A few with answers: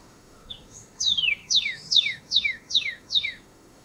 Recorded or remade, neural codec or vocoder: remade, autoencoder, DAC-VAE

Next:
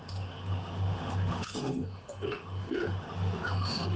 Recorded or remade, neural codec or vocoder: remade, autoencoder, DAC-VAE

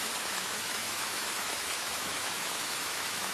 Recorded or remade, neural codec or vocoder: remade, autoencoder, DAC-VAE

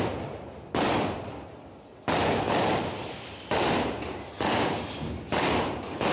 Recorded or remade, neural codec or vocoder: recorded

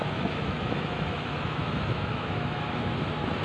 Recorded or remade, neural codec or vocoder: remade, autoencoder, DAC-VAE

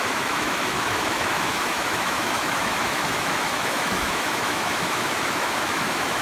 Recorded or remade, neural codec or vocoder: remade, autoencoder, DAC-VAE